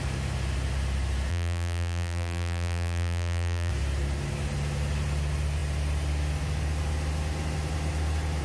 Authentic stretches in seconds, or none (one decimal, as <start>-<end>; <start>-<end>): 0.0-1.3; 3.7-8.4